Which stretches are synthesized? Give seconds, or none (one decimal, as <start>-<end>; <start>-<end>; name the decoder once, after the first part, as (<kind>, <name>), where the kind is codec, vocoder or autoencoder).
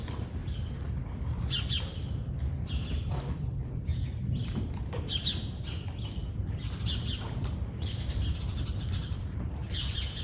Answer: 0.0-0.4 (vocoder, BigVGAN v2); 1.4-10.2